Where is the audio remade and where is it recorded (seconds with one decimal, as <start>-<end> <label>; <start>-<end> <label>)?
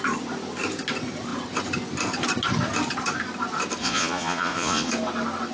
0.0-3.8 recorded; 3.8-4.9 remade; 4.9-5.5 recorded